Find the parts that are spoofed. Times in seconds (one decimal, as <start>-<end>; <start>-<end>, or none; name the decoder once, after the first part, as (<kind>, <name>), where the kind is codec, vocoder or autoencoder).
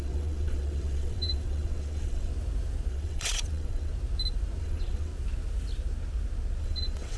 0.0-2.3 (vocoder, WaveNeXt); 2.9-3.9; 4.6-5.1; 6.6-7.2